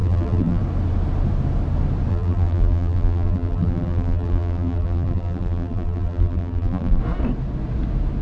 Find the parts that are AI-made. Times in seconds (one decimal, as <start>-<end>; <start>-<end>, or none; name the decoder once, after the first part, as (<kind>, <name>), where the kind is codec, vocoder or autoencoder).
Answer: 0.0-0.6 (vocoder, BigVGAN v2); 2.1-7.0